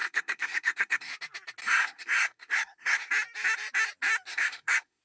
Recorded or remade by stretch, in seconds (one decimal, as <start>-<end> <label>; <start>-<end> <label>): 0.0-1.1 remade; 1.1-1.6 recorded; 1.6-3.1 remade; 3.1-4.3 recorded; 4.3-5.0 remade